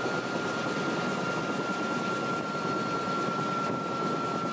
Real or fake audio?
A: real